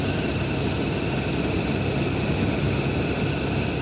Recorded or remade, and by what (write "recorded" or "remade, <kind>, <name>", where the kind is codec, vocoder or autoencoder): recorded